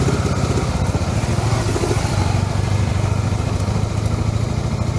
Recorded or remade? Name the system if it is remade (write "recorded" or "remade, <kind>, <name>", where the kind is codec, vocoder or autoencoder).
recorded